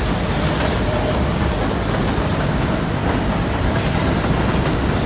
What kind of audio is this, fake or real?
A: real